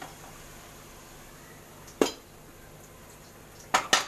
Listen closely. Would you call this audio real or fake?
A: real